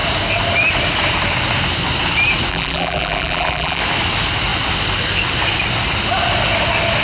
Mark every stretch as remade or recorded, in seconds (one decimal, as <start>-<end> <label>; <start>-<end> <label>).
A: 0.0-2.5 recorded; 2.5-3.8 remade; 3.8-7.0 recorded

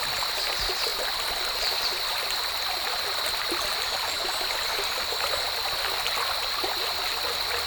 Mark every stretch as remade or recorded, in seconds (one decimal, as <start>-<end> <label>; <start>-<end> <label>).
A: 0.0-0.9 recorded; 0.9-5.5 remade; 5.5-7.7 recorded